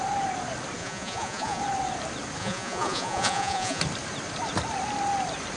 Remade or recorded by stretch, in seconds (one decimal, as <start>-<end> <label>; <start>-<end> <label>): 0.0-0.8 recorded; 0.8-1.6 remade; 1.6-2.4 recorded; 2.4-3.8 remade; 3.8-5.6 recorded